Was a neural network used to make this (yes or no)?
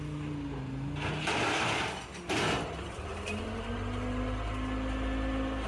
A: no